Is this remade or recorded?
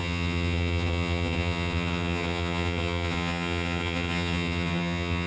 remade